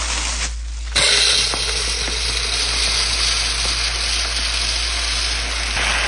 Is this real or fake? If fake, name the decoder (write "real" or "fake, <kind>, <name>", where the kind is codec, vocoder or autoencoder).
real